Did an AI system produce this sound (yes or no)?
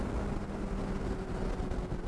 no